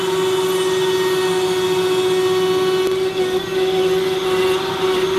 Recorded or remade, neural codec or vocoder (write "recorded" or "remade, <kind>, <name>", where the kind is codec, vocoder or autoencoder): recorded